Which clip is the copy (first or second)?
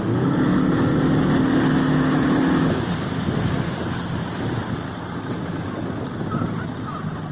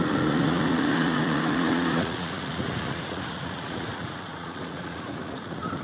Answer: second